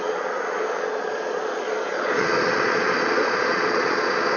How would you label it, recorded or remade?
remade